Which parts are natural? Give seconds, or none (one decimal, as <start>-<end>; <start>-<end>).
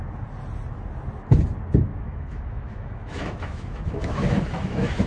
0.0-1.9